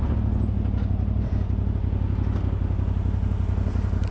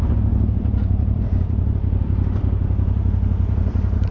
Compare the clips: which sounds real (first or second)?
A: first